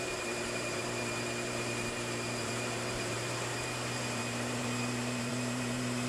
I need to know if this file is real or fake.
fake